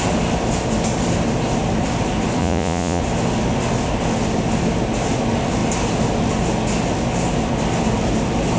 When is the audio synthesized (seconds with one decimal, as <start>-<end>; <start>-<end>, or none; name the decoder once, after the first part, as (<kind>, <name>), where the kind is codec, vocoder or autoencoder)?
2.4-3.0 (vocoder, Vocos)